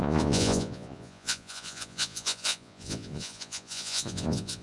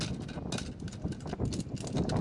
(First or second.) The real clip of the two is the second